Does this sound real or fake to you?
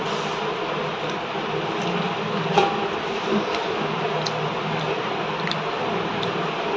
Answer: real